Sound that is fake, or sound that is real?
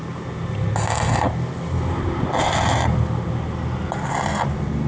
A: real